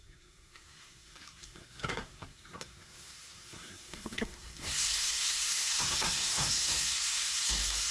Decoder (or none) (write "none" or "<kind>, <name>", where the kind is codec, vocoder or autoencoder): codec, SNAC